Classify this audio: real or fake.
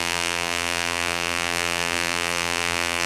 fake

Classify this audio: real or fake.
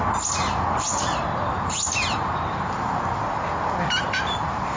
real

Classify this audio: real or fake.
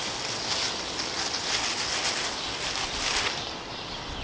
real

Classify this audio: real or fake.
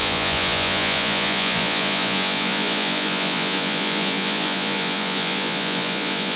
fake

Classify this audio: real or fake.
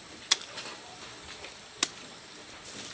real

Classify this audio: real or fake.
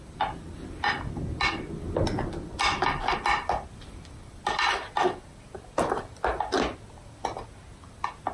real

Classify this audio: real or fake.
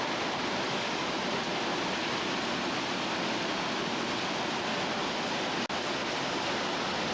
real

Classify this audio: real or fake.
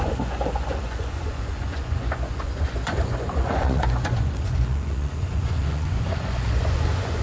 fake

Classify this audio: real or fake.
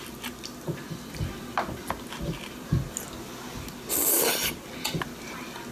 real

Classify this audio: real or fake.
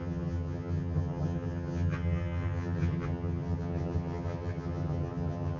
fake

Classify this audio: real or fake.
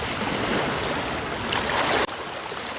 real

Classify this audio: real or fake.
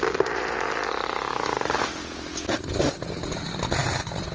real